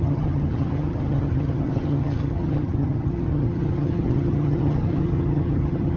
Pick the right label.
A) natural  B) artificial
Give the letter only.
B